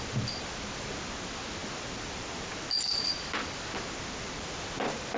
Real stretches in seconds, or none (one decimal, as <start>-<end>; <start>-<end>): 0.0-5.2